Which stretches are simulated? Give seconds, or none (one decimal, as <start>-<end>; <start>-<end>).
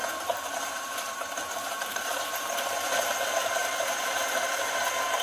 0.0-2.9; 3.6-4.8